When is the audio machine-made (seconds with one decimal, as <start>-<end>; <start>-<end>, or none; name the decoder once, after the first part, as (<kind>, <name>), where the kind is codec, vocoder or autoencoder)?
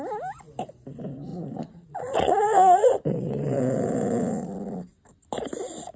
1.3-4.5 (vocoder, Vocos)